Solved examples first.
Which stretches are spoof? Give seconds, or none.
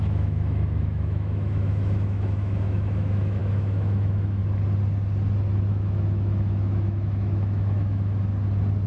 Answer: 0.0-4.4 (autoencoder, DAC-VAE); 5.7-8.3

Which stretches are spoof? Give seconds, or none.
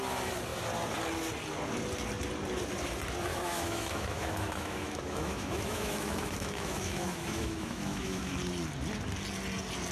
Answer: 3.3-8.4 (autoencoder, DAC-VAE)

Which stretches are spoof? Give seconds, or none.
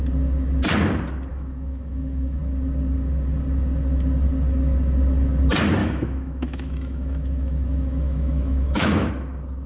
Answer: 1.3-2.4 (autoencoder, DAC-VAE); 5.8-9.1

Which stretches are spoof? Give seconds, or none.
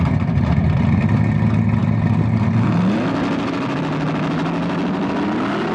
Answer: none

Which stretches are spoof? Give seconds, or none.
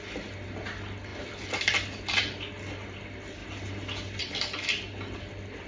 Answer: none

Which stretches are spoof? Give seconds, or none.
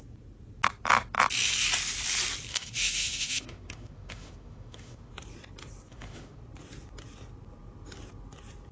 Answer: 2.5-5.1 (autoencoder, DAC-VAE); 5.9-6.4